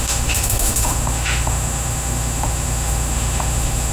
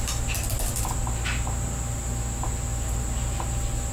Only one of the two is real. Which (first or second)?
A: second